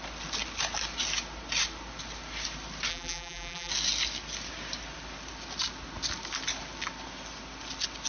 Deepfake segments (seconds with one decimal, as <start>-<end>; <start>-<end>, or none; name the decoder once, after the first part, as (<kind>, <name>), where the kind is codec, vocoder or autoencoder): 2.9-3.7 (vocoder, BigVGAN v2)